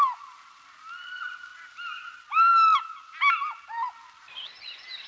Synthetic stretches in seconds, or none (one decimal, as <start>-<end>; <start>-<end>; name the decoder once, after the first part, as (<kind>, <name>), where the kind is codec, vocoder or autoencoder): none